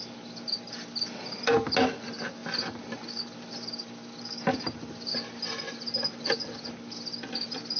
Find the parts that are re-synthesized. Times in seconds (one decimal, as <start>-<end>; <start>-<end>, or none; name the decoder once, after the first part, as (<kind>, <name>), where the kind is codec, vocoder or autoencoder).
none